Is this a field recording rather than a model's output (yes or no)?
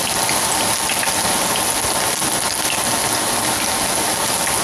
yes